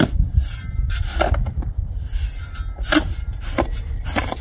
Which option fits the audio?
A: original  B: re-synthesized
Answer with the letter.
A